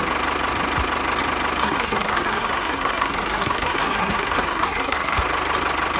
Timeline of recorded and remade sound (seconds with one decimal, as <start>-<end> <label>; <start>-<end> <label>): 0.0-1.6 recorded; 1.6-5.2 remade; 5.2-6.0 recorded